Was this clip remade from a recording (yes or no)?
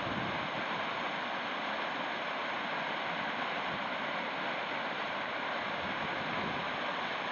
no